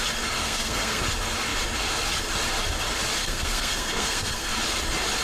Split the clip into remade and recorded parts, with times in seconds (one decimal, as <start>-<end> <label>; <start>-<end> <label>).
0.0-0.4 recorded; 0.4-1.0 remade; 1.0-3.2 recorded; 3.2-4.5 remade; 4.5-5.2 recorded